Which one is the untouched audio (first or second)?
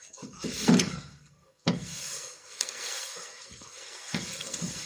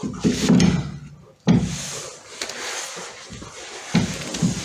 second